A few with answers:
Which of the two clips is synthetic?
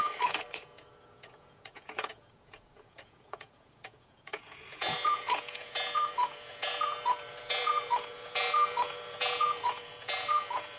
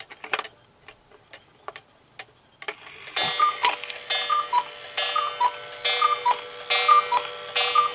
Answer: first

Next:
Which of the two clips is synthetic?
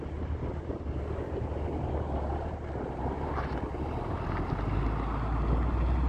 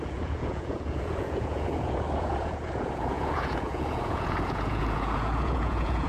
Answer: second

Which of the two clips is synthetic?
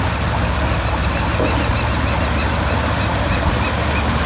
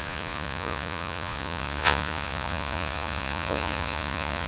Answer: second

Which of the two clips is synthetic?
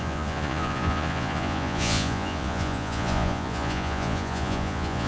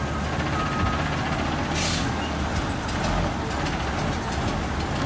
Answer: first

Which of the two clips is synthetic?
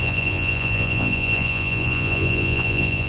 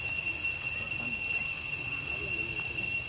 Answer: first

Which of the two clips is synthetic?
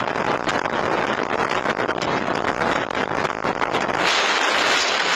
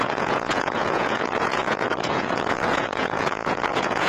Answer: second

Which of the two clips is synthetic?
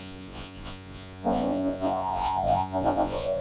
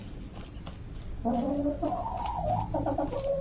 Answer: first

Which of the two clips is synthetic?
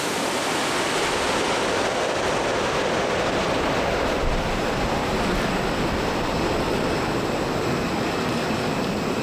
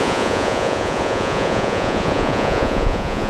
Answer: second